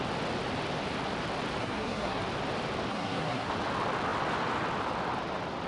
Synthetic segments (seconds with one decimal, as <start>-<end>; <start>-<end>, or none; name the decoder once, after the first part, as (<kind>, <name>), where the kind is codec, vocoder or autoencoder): 1.6-2.2 (codec, SNAC); 2.9-3.5